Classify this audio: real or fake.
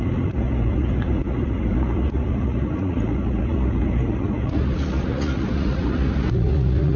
fake